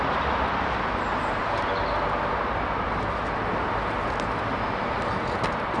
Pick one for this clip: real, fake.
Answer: real